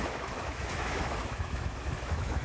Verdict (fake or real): fake